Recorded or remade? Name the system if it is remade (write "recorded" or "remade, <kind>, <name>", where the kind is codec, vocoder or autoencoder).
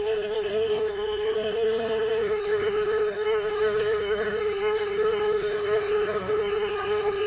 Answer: remade, codec, SNAC